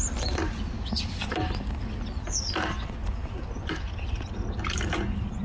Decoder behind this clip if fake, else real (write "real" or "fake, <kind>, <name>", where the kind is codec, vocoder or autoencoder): real